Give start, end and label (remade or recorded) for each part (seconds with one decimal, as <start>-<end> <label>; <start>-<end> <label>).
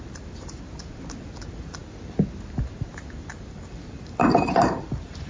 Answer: 0.0-1.8 remade; 1.8-2.9 recorded; 2.9-5.3 remade